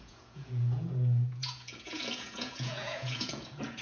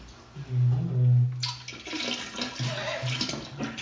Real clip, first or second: second